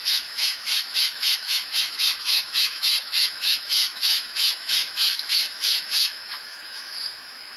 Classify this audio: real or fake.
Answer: fake